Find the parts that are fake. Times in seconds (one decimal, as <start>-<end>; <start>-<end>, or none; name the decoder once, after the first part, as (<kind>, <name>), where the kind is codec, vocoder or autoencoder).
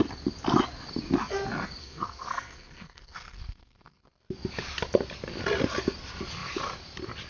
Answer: 1.8-4.0 (codec, SNAC)